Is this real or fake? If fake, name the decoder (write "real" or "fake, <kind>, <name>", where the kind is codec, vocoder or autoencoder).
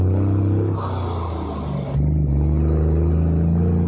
real